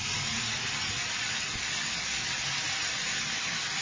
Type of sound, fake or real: real